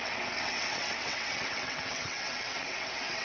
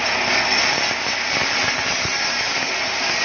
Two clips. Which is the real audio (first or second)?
second